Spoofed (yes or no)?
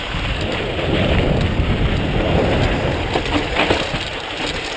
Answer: no